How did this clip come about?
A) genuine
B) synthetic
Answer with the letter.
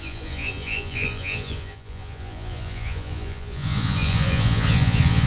B